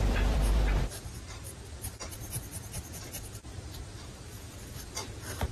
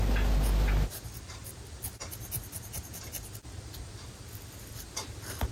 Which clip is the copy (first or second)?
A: first